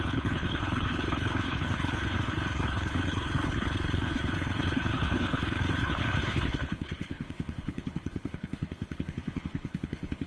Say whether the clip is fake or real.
fake